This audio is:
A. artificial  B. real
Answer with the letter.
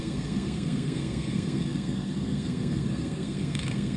A